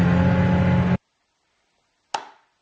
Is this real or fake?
real